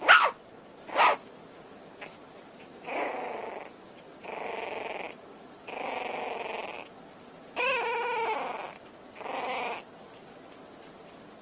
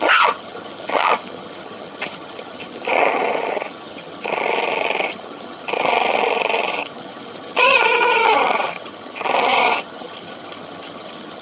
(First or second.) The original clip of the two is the first